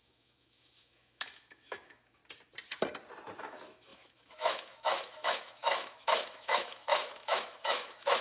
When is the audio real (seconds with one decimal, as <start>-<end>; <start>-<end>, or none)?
2.2-3.4